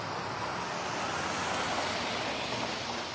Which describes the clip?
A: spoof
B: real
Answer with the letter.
B